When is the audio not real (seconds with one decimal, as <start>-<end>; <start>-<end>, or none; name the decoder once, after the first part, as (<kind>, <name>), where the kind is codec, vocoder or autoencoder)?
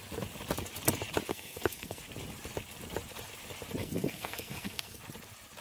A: 1.3-2.0 (codec, SNAC); 3.8-5.0